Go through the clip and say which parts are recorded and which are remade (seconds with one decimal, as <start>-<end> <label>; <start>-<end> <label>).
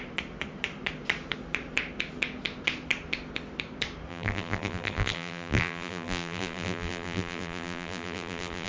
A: 0.0-4.1 recorded; 4.1-8.7 remade